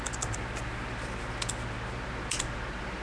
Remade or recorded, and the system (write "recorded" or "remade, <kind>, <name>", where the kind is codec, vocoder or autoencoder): recorded